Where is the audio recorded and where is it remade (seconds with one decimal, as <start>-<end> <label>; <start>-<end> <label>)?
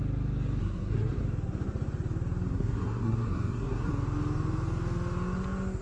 0.0-0.6 recorded; 0.6-1.2 remade; 1.2-2.5 recorded; 2.5-3.9 remade; 3.9-5.8 recorded